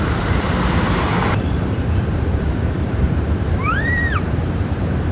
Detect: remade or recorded remade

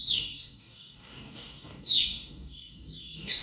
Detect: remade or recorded remade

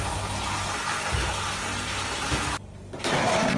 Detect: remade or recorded recorded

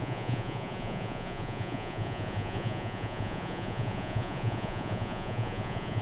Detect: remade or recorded remade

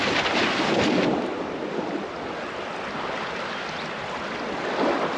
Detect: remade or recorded remade